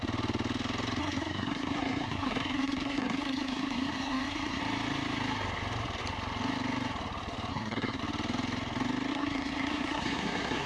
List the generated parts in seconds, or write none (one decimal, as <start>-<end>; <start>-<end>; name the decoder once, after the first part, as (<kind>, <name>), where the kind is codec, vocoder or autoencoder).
1.0-4.6 (codec, SNAC); 7.5-8.0; 9.1-10.7